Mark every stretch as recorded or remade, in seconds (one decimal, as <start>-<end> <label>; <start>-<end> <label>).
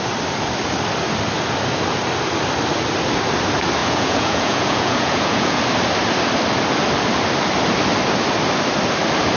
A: 0.0-3.8 recorded; 3.8-5.6 remade; 5.6-9.4 recorded